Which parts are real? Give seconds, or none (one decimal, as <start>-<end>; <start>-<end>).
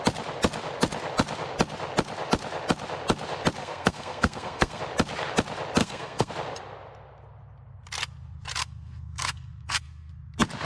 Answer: 0.0-3.6; 4.8-5.8; 6.3-8.6; 10.1-10.7